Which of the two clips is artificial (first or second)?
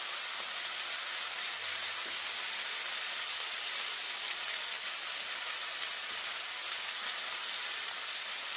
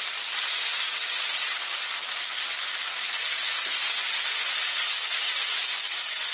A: first